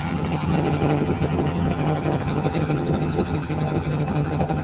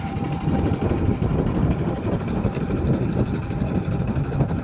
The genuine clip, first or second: second